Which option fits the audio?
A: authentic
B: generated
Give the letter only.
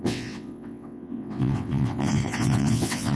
B